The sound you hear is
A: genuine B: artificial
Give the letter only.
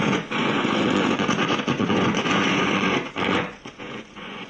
B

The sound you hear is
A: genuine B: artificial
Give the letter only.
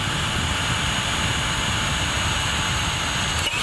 A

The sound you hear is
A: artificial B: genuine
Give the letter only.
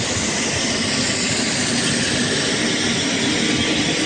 B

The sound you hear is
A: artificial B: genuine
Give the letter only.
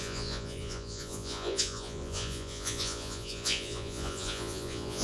A